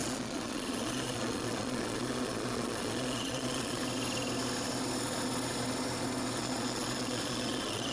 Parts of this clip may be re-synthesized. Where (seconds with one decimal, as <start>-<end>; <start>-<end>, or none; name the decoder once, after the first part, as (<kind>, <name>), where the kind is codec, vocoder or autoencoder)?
0.0-3.8 (vocoder, Vocos); 6.4-7.9